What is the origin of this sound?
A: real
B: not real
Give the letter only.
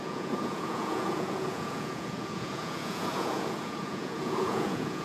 B